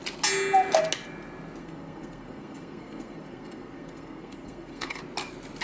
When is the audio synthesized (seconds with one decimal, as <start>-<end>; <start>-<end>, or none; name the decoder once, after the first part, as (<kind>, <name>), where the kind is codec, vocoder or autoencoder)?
1.6-5.0 (codec, SNAC)